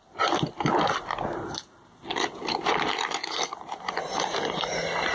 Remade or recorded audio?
recorded